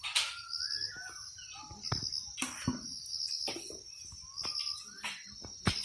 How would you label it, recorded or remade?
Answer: recorded